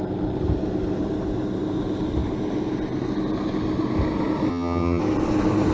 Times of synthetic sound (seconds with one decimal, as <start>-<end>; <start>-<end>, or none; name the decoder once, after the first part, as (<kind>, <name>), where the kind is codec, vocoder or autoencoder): 4.5-5.0 (vocoder, HiFi-GAN)